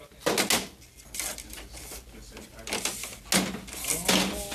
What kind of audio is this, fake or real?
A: real